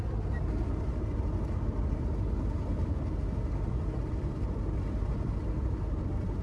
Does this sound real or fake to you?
real